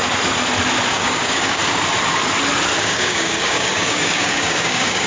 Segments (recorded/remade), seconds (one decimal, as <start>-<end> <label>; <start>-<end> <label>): 0.0-0.9 recorded; 0.9-1.6 remade; 1.6-2.8 recorded; 2.8-5.1 remade